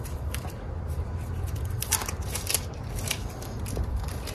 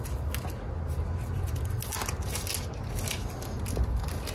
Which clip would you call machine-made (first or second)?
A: first